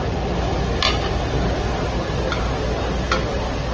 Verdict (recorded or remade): recorded